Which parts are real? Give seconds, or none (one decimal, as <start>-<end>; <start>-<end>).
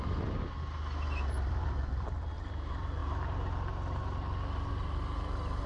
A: 0.0-5.7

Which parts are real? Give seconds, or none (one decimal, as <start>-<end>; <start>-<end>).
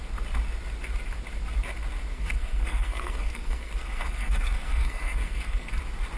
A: 0.0-2.1; 5.8-6.2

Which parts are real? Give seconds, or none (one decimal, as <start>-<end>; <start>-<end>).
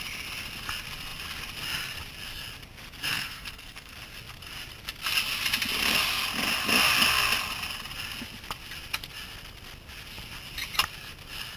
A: 0.0-3.1; 3.9-11.6